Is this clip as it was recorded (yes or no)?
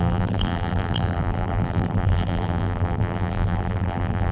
no